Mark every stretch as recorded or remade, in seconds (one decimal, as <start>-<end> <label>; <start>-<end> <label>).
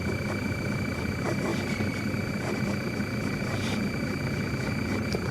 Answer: 0.0-5.3 recorded